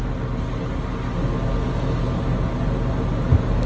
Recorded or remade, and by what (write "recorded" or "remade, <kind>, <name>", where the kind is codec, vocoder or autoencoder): recorded